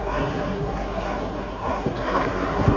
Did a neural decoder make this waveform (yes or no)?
yes